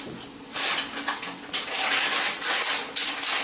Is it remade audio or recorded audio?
recorded